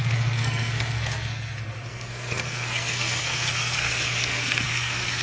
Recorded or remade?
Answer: remade